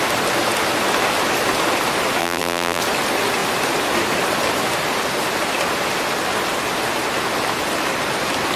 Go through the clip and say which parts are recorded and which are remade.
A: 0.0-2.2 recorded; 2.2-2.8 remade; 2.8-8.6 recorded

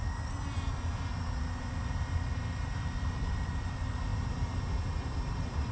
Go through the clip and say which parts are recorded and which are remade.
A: 0.0-2.2 recorded; 2.2-4.1 remade; 4.1-4.8 recorded; 4.8-5.7 remade

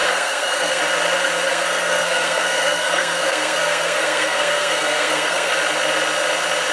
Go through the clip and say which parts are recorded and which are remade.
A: 0.0-0.8 remade; 0.8-1.5 recorded; 1.5-5.5 remade; 5.5-6.7 recorded

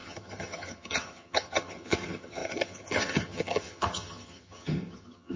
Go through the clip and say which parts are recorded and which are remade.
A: 0.0-5.4 remade

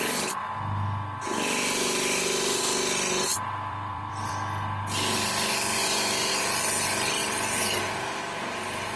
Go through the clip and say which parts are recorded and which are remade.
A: 0.0-3.3 recorded; 3.3-4.3 remade; 4.3-5.8 recorded; 5.8-6.3 remade; 6.3-7.2 recorded; 7.2-7.9 remade; 7.9-9.0 recorded

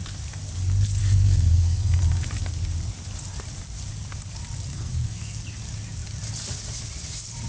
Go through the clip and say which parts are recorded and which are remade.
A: 0.0-1.0 recorded; 1.0-2.0 remade; 2.0-4.7 recorded; 4.7-5.4 remade; 5.4-7.5 recorded

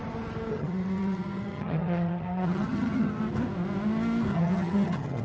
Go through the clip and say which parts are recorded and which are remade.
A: 0.0-0.5 recorded; 0.5-3.2 remade; 3.2-4.3 recorded; 4.3-5.2 remade